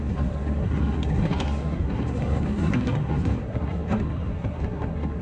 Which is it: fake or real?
fake